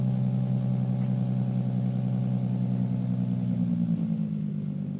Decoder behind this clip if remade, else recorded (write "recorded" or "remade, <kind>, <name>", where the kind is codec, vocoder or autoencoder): recorded